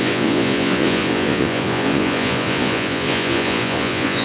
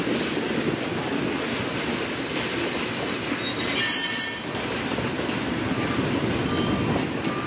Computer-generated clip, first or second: first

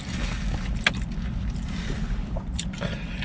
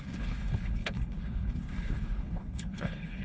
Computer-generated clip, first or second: second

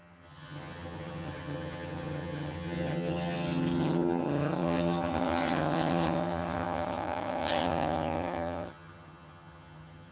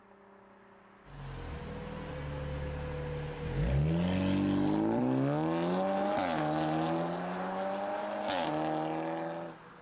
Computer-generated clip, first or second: first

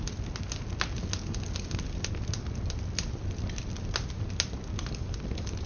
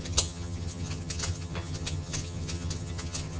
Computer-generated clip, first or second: second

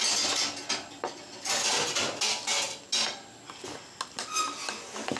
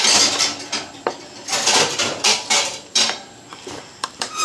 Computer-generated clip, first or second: second